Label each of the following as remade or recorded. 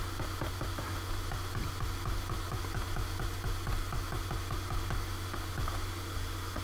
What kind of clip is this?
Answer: recorded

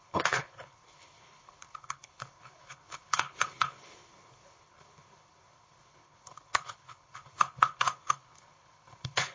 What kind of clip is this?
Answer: remade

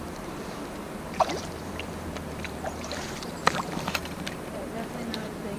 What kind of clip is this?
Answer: remade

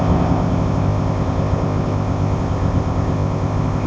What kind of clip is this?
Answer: remade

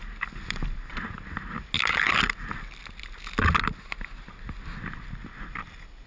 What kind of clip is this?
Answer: recorded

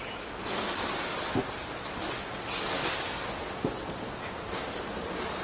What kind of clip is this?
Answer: recorded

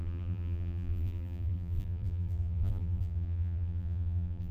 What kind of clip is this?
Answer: remade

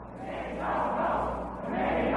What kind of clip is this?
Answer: recorded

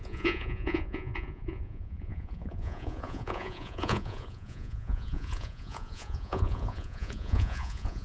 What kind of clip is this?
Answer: remade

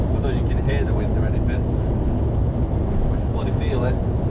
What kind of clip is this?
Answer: recorded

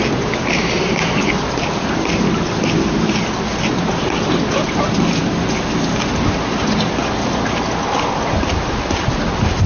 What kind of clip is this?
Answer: recorded